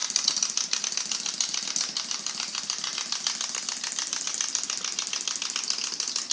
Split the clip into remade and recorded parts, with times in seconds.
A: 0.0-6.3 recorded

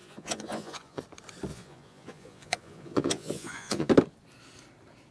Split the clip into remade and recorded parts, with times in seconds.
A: 0.0-1.0 remade; 1.0-1.5 recorded; 1.5-3.9 remade; 3.9-5.1 recorded